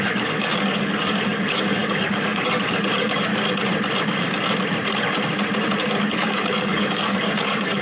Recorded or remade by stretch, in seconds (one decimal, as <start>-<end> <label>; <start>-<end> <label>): 0.0-3.3 remade; 3.3-6.0 recorded; 6.0-7.8 remade